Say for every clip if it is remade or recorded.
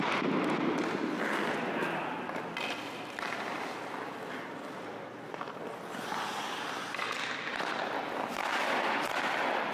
recorded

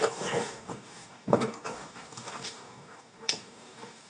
remade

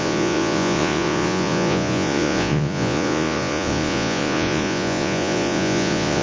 remade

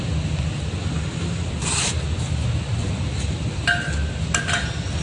recorded